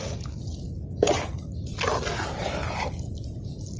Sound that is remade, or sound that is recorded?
recorded